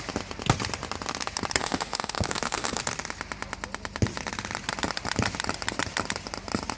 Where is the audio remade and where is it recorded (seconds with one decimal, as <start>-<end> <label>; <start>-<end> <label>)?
0.0-1.6 recorded; 1.6-2.8 remade; 2.8-6.8 recorded